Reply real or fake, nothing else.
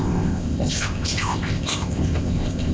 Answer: fake